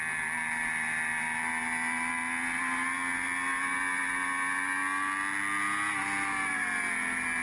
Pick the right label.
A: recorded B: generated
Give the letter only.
A